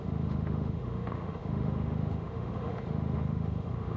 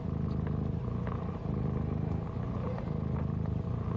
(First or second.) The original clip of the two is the second